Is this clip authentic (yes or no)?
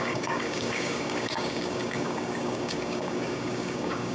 no